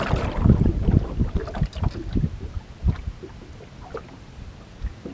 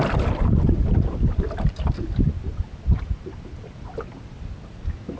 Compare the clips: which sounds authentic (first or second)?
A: first